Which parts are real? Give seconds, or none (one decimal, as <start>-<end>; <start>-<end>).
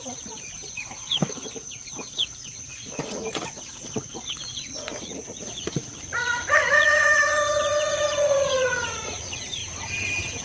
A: 9.6-10.4